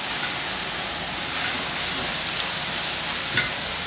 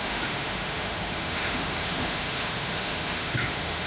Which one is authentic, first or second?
first